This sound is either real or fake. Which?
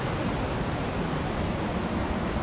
real